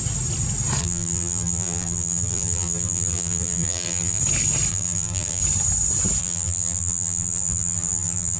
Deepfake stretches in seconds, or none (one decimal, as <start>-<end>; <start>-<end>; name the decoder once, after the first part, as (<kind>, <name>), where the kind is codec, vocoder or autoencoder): 0.8-4.2 (vocoder, BigVGAN v2); 4.7-5.4; 6.2-8.4